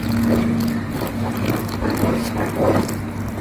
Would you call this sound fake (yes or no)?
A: no